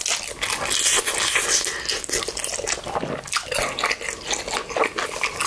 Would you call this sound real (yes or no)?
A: yes